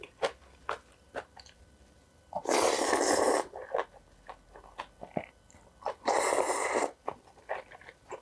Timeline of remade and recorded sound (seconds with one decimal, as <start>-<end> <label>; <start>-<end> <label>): 0.0-3.6 remade; 3.6-6.6 recorded; 6.6-8.2 remade